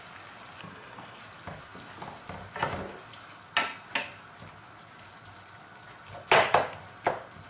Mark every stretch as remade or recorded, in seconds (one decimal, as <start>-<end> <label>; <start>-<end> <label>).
0.0-0.6 recorded; 0.6-1.2 remade; 1.2-7.5 recorded